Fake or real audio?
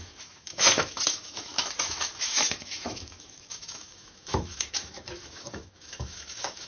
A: fake